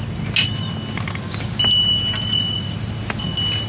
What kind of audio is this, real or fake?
real